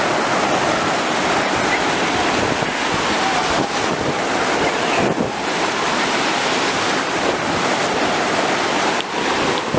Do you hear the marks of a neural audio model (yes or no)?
no